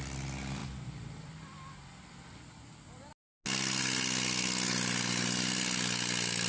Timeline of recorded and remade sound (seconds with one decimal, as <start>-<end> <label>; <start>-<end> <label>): 0.0-6.5 recorded